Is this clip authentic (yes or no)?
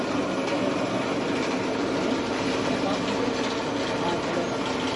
yes